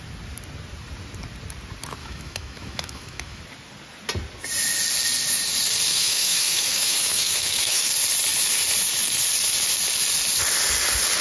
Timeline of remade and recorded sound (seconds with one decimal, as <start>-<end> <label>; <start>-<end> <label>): 0.0-2.0 recorded; 2.0-3.4 remade; 3.4-5.9 recorded; 5.9-7.9 remade; 7.9-11.2 recorded